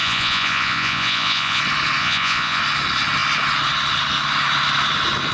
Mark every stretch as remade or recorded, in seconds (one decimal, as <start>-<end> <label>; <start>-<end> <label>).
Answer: 0.0-1.6 remade; 1.6-2.0 recorded; 2.0-2.6 remade; 2.6-5.3 recorded